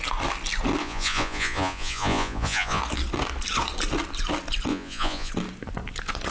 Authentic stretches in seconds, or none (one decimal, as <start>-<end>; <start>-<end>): 0.0-0.8; 2.8-4.7; 5.3-6.3